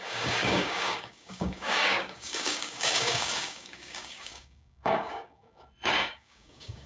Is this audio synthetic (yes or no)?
yes